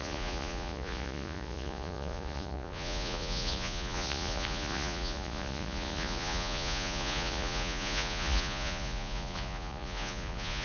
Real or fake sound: fake